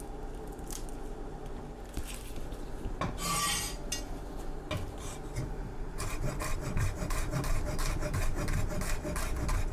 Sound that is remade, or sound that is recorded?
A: recorded